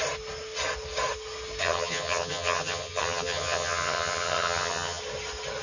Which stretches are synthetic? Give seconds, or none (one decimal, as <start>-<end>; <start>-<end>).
1.6-5.0